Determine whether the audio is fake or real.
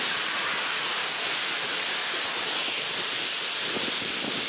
real